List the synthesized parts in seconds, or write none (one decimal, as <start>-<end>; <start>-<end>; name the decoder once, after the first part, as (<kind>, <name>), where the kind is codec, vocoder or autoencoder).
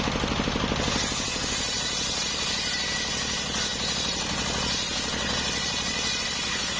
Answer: none